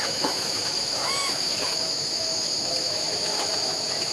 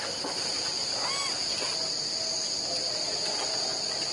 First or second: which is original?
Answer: second